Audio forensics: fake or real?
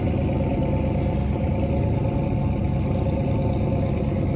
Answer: real